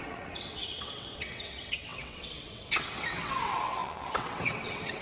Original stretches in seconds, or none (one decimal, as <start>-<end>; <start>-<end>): none